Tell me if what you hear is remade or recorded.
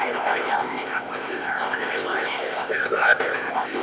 remade